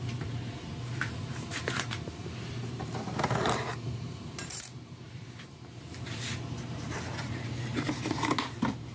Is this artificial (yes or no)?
yes